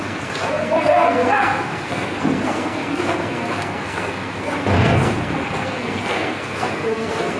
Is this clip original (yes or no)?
no